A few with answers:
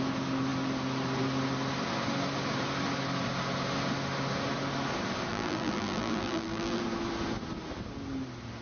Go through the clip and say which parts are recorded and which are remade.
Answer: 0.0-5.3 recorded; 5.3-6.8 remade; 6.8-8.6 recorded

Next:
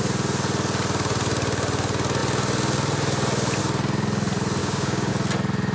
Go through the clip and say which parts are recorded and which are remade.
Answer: 0.0-4.6 recorded; 4.6-5.1 remade; 5.1-5.7 recorded

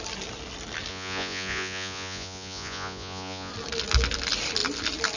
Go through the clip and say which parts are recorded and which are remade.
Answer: 0.0-0.9 recorded; 0.9-3.5 remade; 3.5-5.2 recorded

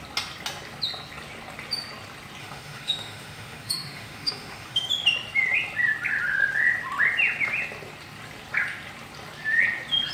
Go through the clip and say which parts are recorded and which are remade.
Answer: 0.0-2.4 recorded; 2.4-4.9 remade; 4.9-10.1 recorded

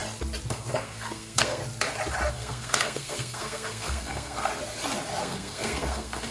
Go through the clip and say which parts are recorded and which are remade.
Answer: 0.0-0.5 recorded; 0.5-1.6 remade; 1.6-2.3 recorded; 2.3-4.5 remade; 4.5-5.2 recorded; 5.2-6.3 remade

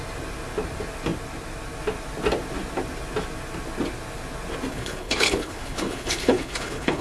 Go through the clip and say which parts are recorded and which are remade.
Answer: 0.0-4.7 recorded; 4.7-7.0 remade

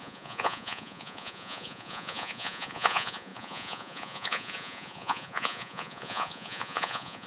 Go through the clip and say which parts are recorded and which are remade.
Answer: 0.0-7.3 remade

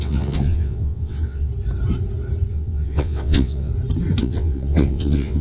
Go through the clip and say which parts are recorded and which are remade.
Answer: 0.0-1.5 remade; 1.5-2.5 recorded; 2.5-3.7 remade; 3.7-4.2 recorded; 4.2-5.4 remade